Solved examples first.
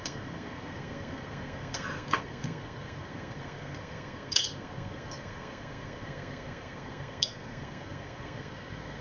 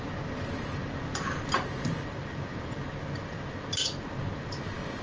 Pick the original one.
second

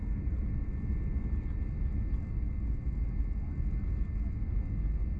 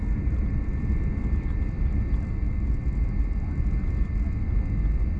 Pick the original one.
first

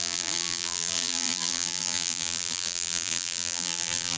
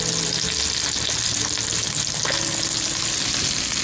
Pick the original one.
second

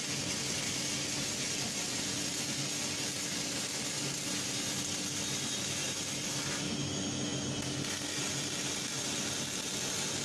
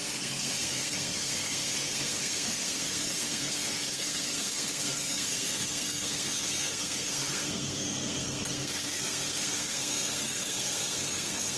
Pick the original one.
first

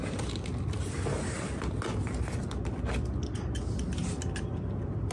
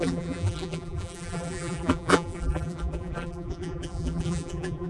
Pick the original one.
first